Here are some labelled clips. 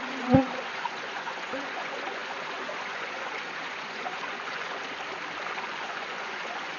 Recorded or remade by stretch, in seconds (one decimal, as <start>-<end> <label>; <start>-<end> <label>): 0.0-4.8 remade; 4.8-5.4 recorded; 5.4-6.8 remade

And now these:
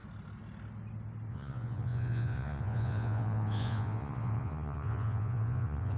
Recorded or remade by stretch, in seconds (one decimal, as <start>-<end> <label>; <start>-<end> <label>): 0.0-1.3 recorded; 1.3-6.0 remade

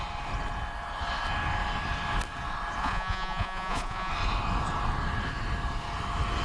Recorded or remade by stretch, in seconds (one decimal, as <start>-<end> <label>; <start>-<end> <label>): 0.0-2.8 recorded; 2.8-4.1 remade; 4.1-6.4 recorded